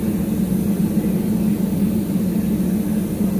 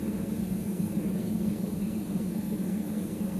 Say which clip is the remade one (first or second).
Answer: second